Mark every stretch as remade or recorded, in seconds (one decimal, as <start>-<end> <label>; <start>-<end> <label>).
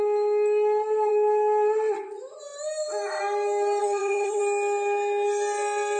0.0-3.8 recorded; 3.8-4.4 remade; 4.4-6.0 recorded